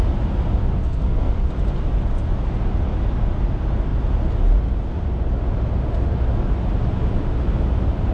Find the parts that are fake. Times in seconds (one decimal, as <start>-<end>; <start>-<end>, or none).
0.6-1.5